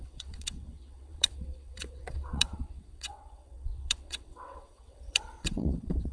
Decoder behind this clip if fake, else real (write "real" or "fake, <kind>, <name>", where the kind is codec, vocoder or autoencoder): fake, vocoder, WaveNeXt